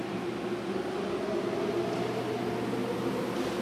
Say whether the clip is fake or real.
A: real